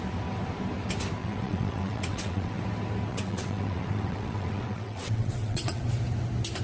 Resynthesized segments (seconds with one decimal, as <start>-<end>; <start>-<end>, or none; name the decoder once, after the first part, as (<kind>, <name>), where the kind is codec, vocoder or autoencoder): 1.2-2.6 (vocoder, WaveNeXt); 3.1-5.8